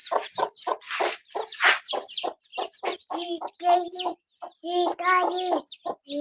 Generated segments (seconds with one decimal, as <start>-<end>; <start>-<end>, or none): none